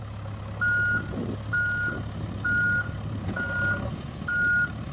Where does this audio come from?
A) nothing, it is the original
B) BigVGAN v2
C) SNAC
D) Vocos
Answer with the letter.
A